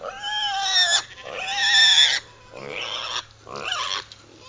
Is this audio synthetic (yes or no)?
no